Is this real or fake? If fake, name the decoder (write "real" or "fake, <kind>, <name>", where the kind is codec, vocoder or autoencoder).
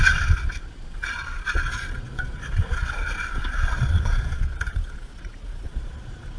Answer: fake, vocoder, Vocos